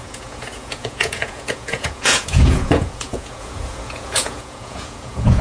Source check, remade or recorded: remade